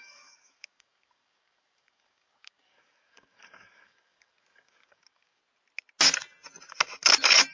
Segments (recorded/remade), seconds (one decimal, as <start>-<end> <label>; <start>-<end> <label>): 0.0-5.4 remade; 5.4-7.5 recorded